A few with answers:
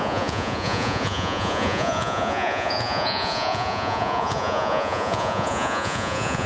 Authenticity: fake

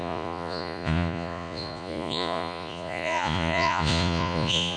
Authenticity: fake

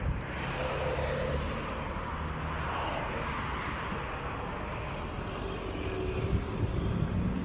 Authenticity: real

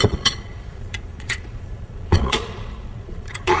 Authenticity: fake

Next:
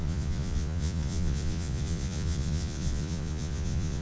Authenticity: fake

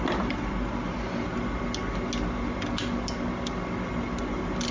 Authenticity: real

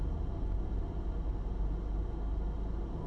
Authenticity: real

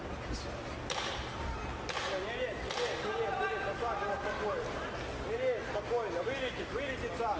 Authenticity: real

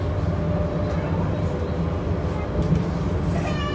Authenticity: real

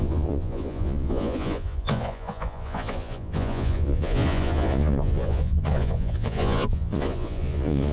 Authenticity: fake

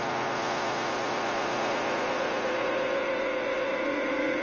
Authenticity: fake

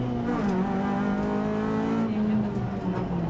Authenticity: real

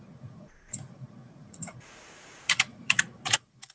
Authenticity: fake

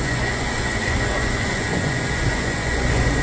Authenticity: fake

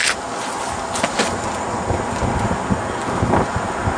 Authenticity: real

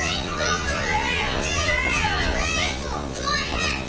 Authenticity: fake